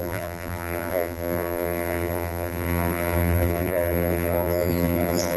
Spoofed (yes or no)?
yes